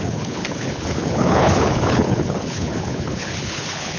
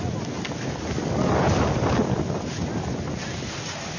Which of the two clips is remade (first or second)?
first